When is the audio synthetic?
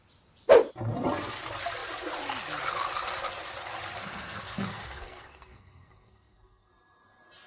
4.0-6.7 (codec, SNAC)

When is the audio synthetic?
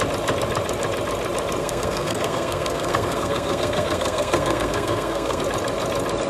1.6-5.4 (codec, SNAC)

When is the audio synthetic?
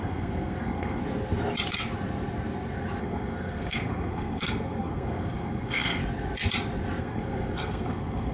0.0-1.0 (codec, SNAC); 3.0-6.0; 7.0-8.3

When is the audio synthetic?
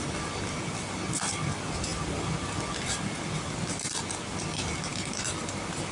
none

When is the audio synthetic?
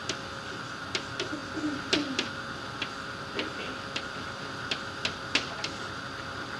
none